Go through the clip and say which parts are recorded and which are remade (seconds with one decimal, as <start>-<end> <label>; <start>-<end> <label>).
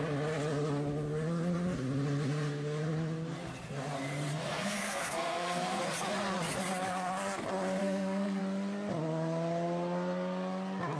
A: 0.0-4.5 recorded; 4.5-5.8 remade; 5.8-7.8 recorded; 7.8-8.4 remade; 8.4-11.0 recorded